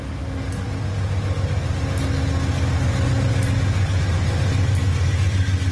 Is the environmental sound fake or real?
real